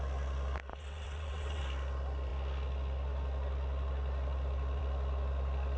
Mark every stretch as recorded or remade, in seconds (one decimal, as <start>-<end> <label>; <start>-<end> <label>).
0.0-0.7 recorded; 0.7-1.6 remade; 1.6-5.8 recorded